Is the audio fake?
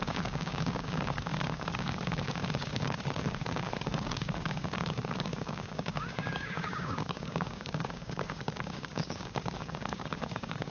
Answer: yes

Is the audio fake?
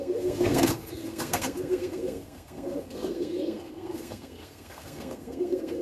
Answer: yes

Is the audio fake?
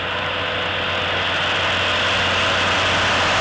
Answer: no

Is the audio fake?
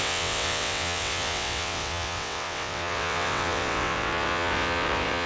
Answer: yes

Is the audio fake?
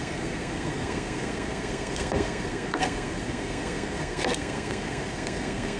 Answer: yes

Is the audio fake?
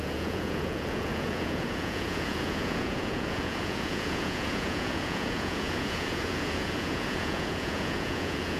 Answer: yes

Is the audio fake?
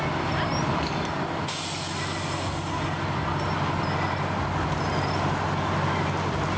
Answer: no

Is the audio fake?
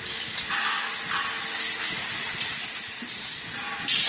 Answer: no